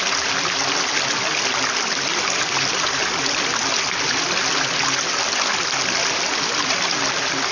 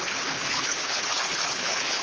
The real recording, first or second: first